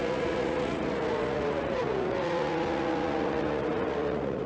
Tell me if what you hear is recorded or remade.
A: remade